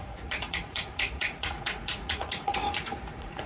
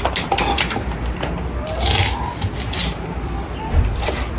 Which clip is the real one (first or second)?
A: second